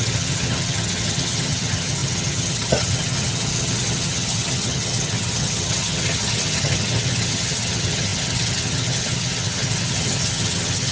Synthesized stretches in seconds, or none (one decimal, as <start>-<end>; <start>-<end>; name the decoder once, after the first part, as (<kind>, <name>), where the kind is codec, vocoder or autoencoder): 0.0-10.9 (vocoder, HiFi-GAN)